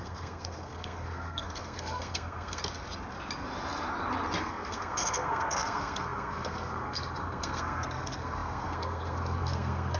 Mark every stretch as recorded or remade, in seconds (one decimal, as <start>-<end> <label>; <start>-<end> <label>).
0.0-2.6 remade; 2.6-4.4 recorded; 4.4-10.0 remade